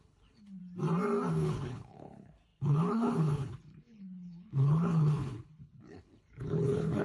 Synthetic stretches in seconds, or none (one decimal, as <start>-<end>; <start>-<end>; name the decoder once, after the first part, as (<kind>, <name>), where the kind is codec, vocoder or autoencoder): 0.0-0.6 (codec, HILCodec); 1.3-7.0